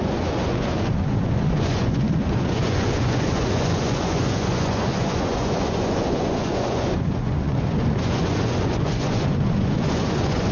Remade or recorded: remade